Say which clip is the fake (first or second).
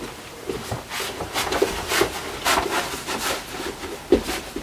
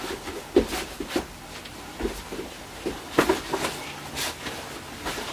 first